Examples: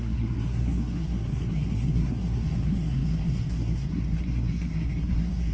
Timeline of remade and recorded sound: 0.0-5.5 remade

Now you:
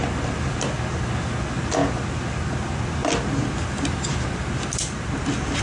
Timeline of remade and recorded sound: 0.0-5.6 recorded

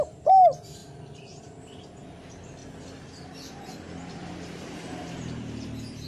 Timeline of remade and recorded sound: 0.0-0.8 recorded; 0.8-1.4 remade; 1.4-6.1 recorded

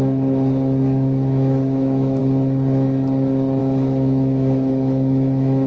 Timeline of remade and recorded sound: 0.0-2.2 remade; 2.2-3.6 recorded; 3.6-5.7 remade

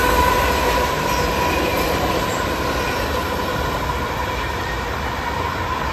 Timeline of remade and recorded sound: 0.0-1.7 recorded; 1.7-2.6 remade; 2.6-5.9 recorded

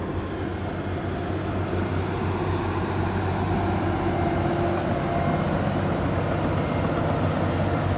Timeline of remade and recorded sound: 0.0-8.0 recorded